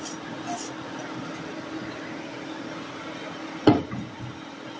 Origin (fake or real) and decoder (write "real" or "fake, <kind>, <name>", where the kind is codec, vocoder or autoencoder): real